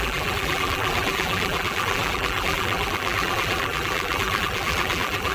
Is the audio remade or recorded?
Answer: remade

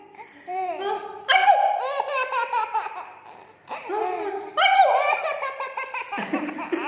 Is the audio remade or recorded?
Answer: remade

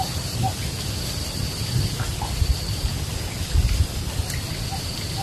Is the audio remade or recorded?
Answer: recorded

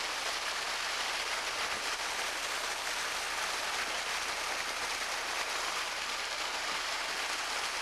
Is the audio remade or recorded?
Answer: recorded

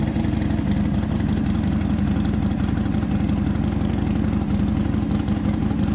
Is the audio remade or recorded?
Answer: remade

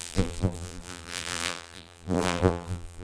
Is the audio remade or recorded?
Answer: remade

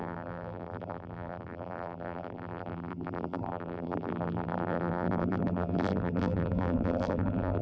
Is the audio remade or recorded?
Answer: remade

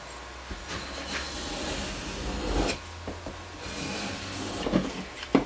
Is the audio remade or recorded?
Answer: recorded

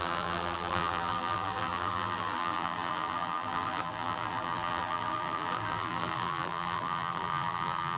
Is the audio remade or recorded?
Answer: remade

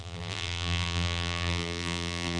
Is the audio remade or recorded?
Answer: remade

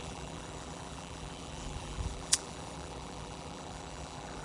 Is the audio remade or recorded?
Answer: remade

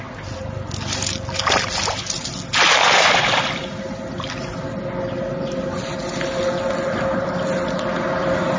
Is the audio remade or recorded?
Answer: recorded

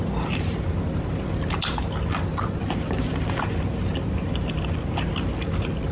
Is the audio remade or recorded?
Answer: recorded